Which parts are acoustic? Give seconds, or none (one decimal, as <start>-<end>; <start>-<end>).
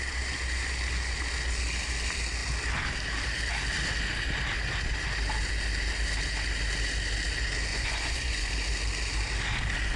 0.0-7.7; 8.5-10.0